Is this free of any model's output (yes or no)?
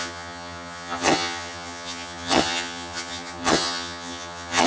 no